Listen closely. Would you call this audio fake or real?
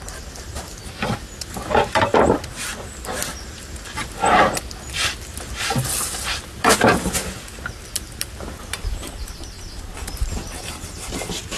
real